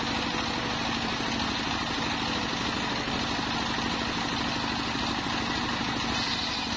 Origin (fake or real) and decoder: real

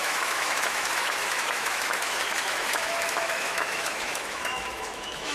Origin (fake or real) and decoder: fake, autoencoder, DAC-VAE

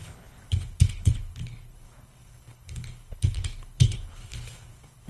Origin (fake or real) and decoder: fake, codec, HILCodec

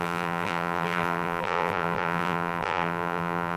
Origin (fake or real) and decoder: fake, vocoder, BigVGAN v2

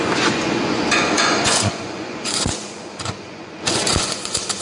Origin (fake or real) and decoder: fake, vocoder, Vocos